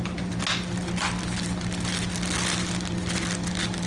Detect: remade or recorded recorded